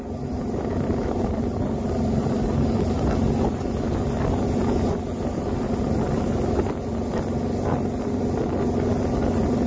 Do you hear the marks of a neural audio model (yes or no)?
no